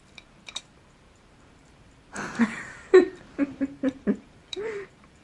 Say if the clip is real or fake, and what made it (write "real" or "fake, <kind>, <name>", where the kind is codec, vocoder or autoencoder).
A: fake, vocoder, BigVGAN v2